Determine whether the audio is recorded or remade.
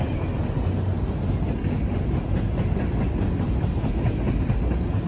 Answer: recorded